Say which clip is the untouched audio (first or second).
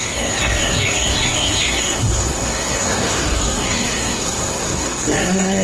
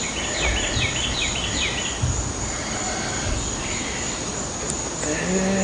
second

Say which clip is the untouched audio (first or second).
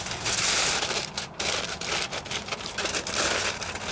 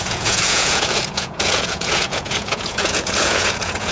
first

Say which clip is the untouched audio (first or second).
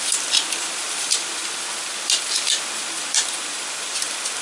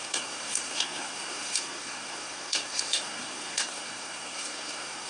first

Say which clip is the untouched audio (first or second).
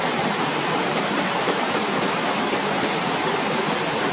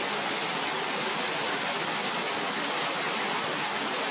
second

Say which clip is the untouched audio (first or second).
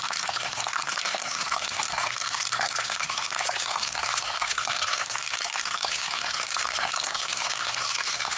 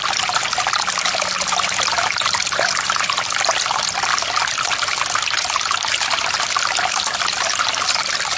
second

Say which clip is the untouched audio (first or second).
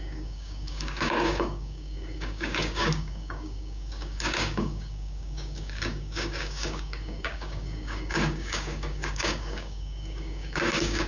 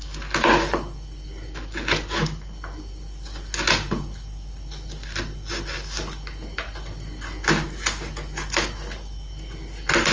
second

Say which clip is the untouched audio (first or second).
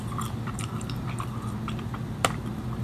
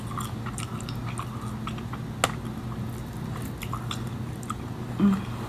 second